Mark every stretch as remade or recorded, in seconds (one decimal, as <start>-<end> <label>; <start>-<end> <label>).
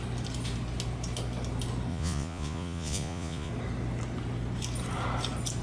0.0-1.9 recorded; 1.9-3.5 remade; 3.5-5.6 recorded